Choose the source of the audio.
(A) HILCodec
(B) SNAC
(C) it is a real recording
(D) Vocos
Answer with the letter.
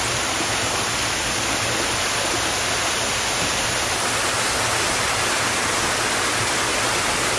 C